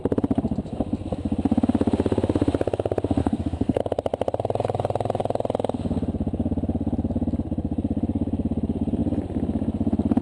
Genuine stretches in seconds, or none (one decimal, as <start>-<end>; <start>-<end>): 0.0-3.2; 3.8-10.2